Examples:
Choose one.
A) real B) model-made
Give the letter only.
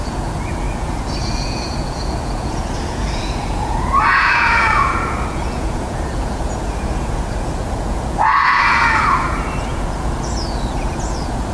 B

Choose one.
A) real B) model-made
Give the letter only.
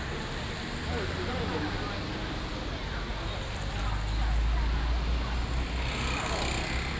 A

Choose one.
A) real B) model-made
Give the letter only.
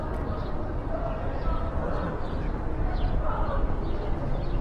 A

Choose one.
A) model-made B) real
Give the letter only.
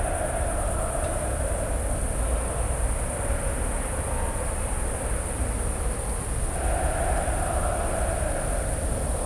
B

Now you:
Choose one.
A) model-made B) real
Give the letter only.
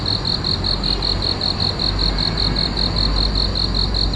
B